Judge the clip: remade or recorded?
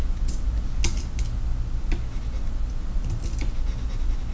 recorded